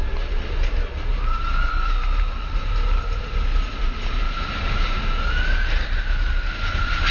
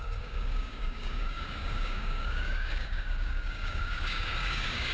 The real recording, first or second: first